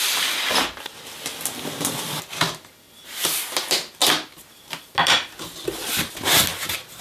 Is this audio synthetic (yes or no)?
no